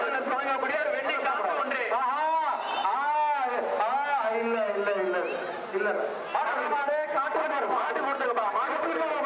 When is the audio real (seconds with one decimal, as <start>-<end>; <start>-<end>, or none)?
0.0-9.3